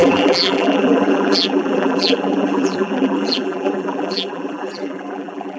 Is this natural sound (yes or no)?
no